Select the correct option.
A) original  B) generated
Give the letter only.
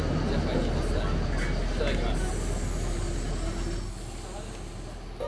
A